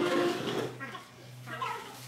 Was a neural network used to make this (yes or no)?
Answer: yes